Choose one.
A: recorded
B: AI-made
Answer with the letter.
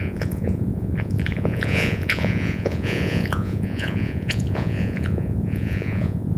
B